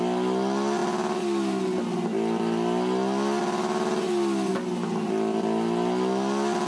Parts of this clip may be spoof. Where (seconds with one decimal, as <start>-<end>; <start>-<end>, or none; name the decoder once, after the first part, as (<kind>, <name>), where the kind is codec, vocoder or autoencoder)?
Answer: none